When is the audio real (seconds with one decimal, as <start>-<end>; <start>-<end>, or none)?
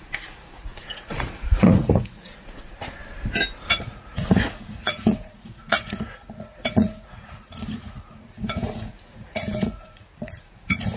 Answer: 3.0-3.7